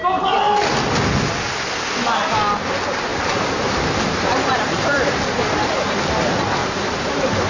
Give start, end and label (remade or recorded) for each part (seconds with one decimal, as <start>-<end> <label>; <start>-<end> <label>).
0.0-3.1 recorded; 3.1-5.0 remade; 5.0-6.6 recorded; 6.6-7.5 remade